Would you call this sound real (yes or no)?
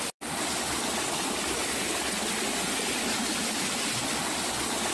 yes